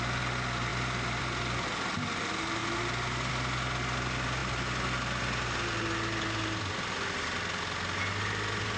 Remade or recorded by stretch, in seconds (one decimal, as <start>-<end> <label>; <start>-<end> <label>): 0.0-8.8 recorded